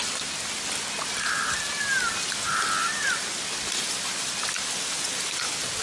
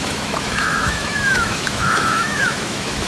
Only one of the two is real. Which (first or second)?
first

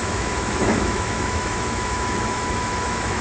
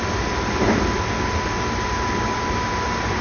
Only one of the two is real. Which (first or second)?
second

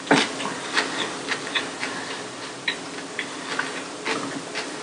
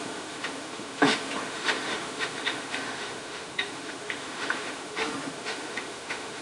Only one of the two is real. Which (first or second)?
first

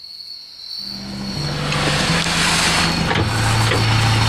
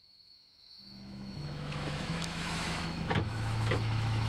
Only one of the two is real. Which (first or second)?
first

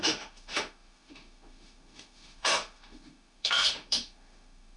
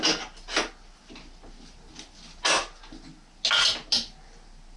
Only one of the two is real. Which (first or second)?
second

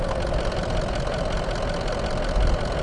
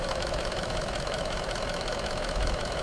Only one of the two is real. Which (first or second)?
first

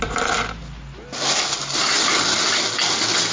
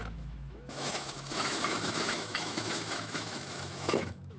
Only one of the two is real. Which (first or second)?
first